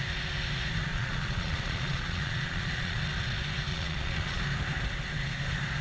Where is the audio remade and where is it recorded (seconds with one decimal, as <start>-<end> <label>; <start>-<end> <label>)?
0.0-0.9 recorded; 0.9-3.0 remade; 3.0-3.7 recorded; 3.7-4.4 remade; 4.4-5.8 recorded